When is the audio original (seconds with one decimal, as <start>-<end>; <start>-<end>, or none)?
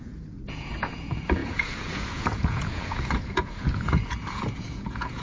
none